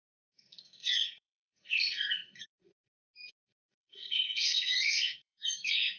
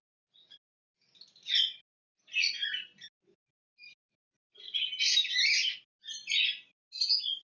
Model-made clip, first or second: first